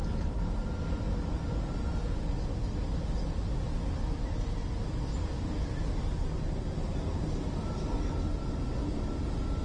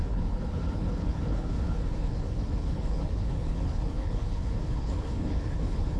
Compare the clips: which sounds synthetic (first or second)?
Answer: second